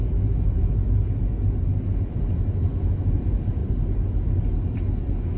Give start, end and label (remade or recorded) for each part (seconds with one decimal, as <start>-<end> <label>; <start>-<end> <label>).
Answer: 0.0-3.6 recorded; 3.6-4.3 remade; 4.3-5.4 recorded